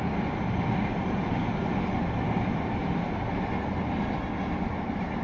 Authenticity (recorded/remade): recorded